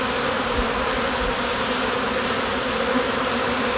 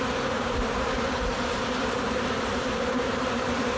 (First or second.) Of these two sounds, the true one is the first